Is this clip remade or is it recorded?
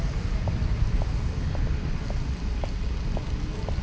recorded